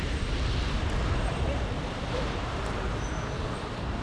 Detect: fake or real fake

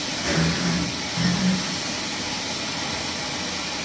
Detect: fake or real real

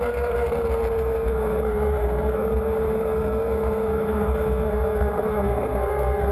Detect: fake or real fake